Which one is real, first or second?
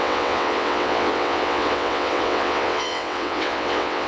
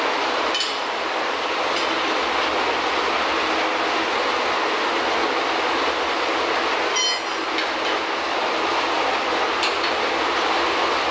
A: second